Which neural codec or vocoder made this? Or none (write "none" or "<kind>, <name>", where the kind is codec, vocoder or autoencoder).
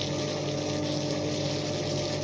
none